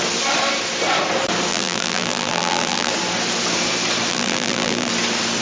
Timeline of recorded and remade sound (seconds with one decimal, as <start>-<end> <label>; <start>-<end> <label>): 0.0-1.5 recorded; 1.5-2.9 remade; 2.9-4.1 recorded; 4.1-4.9 remade; 4.9-5.4 recorded